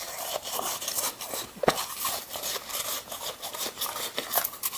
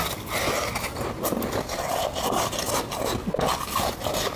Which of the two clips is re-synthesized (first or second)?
first